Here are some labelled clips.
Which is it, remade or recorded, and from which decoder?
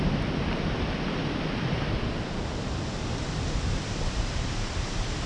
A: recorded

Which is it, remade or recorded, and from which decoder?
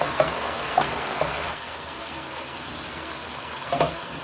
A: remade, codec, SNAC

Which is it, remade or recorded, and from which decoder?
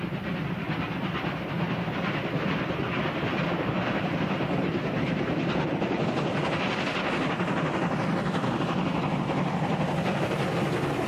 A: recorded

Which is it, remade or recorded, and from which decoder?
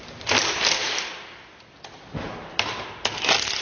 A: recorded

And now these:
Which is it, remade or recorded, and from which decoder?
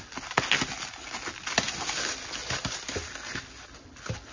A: recorded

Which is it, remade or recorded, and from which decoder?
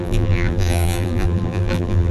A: remade, vocoder, BigVGAN v2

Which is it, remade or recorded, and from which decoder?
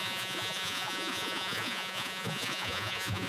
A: remade, vocoder, Vocos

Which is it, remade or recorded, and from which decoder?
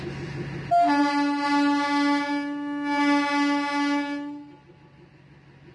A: recorded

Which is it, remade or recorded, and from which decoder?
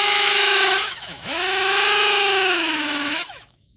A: remade, autoencoder, DAC-VAE